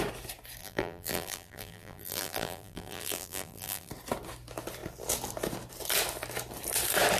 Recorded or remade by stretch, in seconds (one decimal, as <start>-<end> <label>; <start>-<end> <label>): 0.0-0.6 recorded; 0.6-3.9 remade; 3.9-7.2 recorded